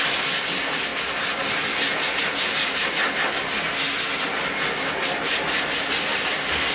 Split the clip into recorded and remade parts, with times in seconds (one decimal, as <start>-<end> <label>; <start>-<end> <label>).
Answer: 0.0-6.7 recorded